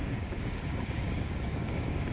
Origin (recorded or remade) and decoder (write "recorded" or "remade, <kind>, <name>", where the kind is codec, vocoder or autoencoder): remade, codec, DAC